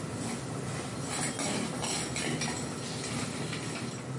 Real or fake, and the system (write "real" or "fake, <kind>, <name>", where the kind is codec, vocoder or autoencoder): real